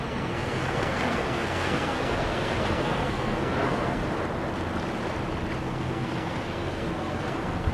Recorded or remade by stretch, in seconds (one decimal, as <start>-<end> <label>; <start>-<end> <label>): 0.0-4.0 remade; 4.0-5.6 recorded; 5.6-7.7 remade